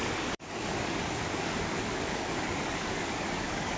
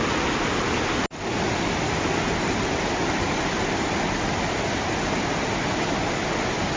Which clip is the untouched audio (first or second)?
second